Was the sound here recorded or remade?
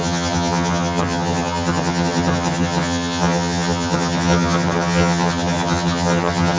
remade